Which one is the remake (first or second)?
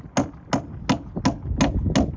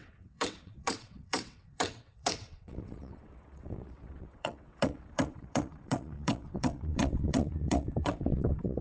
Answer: second